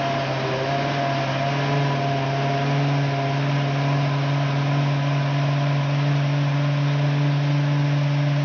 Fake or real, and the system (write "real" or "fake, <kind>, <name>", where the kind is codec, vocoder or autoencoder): real